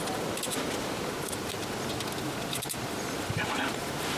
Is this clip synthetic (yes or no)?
no